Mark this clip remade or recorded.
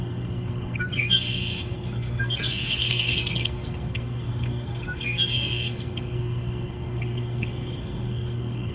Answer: remade